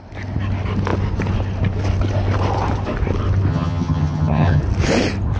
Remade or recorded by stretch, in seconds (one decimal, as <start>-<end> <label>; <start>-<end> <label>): 0.0-3.5 recorded; 3.5-4.6 remade; 4.6-5.4 recorded